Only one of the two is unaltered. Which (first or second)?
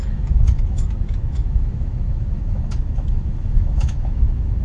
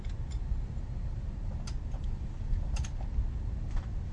second